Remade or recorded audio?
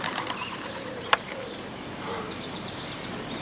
remade